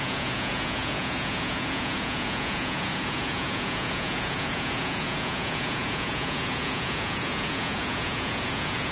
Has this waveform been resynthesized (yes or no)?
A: yes